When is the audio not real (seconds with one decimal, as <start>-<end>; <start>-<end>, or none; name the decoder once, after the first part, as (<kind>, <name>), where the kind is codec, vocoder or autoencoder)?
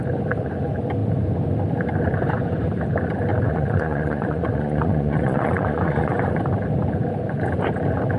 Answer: 3.3-6.3 (vocoder, Vocos)